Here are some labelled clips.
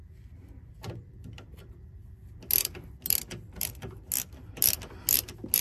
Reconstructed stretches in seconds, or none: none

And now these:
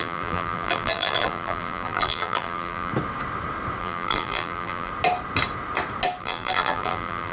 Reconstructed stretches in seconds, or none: 0.0-2.9 (vocoder, BigVGAN v2); 3.8-4.9; 6.2-7.3

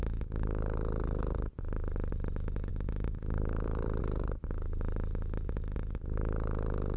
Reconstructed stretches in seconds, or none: 2.7-4.0 (vocoder, BigVGAN v2)

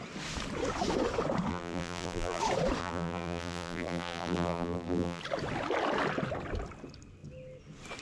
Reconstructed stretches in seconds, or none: 1.5-2.4 (vocoder, BigVGAN v2); 2.8-5.2

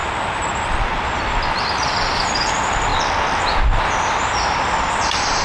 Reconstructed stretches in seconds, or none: 0.6-5.4 (vocoder, BigVGAN v2)

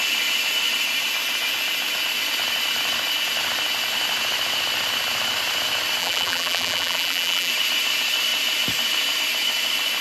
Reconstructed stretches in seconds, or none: 6.0-7.5 (vocoder, BigVGAN v2)

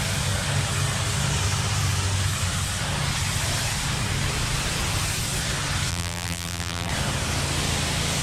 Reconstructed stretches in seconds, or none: 5.9-6.9 (vocoder, BigVGAN v2)

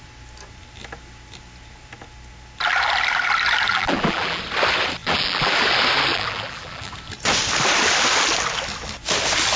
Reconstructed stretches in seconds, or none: 3.7-4.4 (vocoder, BigVGAN v2); 5.0-5.6; 6.1-6.9